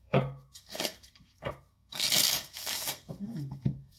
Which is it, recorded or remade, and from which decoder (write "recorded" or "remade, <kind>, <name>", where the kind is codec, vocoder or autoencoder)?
remade, codec, SNAC